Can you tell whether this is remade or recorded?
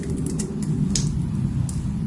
recorded